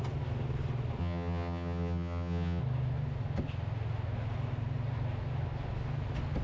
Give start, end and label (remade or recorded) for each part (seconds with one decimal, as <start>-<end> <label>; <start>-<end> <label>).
0.0-1.0 recorded; 1.0-2.6 remade; 2.6-6.4 recorded